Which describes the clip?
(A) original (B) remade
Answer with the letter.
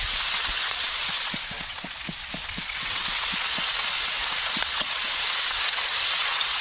B